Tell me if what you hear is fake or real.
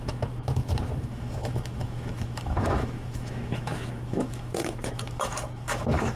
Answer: fake